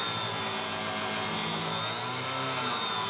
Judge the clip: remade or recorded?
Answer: recorded